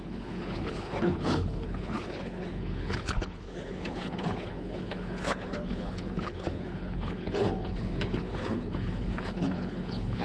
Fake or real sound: fake